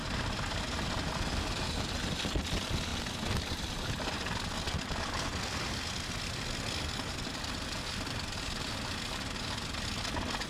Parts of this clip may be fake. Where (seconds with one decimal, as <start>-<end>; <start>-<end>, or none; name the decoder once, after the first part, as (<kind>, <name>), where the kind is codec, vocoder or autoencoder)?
none

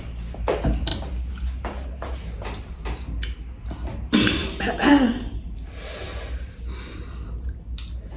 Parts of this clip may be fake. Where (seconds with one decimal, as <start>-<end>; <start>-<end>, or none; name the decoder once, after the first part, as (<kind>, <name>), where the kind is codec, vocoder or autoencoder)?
4.4-5.2 (vocoder, BigVGAN v2)

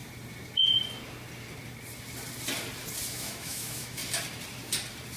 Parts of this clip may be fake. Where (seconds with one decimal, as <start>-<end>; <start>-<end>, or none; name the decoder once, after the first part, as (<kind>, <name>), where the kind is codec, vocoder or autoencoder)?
3.1-4.0 (autoencoder, DAC-VAE)

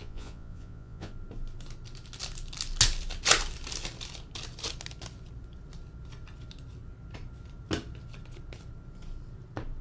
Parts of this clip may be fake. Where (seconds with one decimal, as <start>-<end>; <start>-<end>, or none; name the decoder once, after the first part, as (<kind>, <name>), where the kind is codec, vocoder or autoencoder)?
0.0-1.1 (vocoder, Vocos)

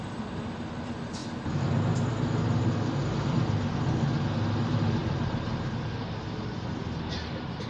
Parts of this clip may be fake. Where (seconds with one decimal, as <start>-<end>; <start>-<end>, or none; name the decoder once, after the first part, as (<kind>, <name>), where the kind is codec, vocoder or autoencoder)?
none

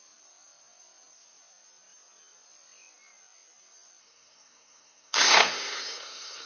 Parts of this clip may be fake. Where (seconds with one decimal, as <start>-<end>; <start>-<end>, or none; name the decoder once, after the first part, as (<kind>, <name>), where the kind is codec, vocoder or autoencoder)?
4.0-6.5 (codec, SNAC)

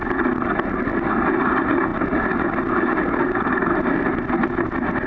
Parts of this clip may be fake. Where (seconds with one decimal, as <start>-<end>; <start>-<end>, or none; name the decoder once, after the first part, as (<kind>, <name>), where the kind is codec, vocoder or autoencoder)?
none

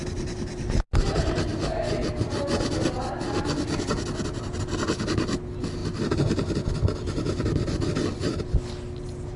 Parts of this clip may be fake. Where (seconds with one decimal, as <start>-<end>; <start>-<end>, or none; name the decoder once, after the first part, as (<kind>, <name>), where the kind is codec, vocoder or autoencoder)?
none